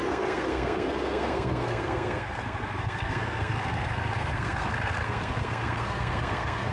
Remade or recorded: remade